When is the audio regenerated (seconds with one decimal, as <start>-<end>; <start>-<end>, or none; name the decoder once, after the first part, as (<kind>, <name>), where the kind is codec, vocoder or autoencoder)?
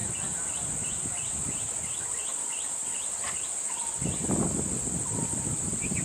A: none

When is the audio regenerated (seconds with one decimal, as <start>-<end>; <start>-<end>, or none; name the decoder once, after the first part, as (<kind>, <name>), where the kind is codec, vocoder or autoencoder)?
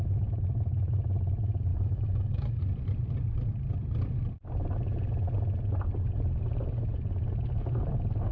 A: 1.7-2.6 (autoencoder, DAC-VAE)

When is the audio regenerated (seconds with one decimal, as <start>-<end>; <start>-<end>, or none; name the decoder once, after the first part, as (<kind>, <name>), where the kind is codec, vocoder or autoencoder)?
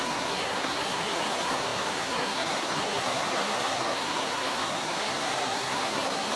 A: 0.0-6.4 (codec, SNAC)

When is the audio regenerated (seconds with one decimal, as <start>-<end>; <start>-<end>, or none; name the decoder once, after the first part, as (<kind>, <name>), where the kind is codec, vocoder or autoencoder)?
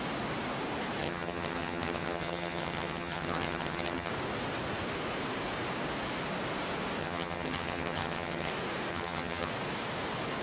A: 1.0-4.1 (vocoder, HiFi-GAN); 7.0-8.5; 8.9-9.5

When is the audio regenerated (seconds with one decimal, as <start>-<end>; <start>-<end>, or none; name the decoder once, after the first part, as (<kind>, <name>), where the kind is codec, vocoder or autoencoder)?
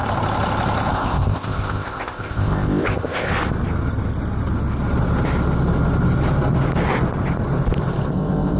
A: 0.9-3.3 (codec, ZipCodec); 8.1-8.6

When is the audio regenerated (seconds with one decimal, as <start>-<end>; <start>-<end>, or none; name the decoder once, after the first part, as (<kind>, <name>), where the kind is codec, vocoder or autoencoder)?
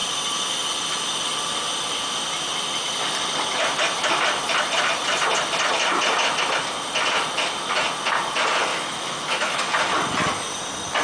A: 8.7-9.7 (autoencoder, DAC-VAE)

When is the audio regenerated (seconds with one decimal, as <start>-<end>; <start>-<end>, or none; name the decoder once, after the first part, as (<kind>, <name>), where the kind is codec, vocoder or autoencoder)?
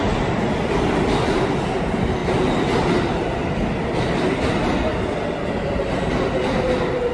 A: none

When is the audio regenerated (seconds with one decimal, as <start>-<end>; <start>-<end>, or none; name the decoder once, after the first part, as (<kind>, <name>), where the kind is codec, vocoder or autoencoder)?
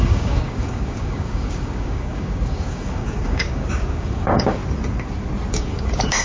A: 0.0-4.6 (codec, DAC); 5.5-6.2